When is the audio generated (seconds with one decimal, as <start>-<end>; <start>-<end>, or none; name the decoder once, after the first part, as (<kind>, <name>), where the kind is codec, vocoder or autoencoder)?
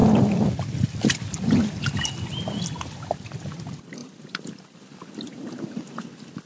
4.0-4.5 (vocoder, BigVGAN v2)